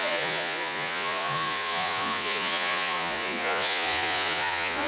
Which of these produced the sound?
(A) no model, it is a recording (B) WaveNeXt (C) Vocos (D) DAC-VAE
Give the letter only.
C